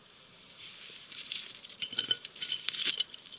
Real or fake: fake